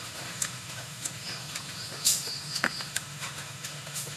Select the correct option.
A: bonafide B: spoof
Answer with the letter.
B